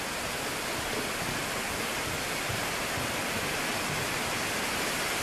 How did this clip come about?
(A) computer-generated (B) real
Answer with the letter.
B